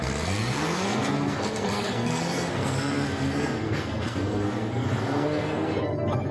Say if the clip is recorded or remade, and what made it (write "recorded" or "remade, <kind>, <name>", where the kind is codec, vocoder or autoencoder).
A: remade, codec, SNAC